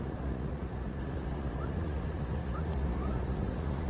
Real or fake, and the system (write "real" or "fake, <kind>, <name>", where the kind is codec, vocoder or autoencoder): fake, vocoder, Vocos